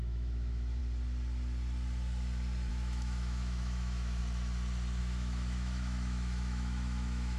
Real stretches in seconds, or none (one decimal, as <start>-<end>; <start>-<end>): 0.8-2.7; 4.2-5.0